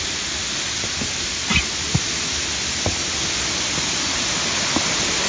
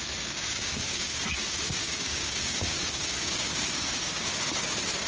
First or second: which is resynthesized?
second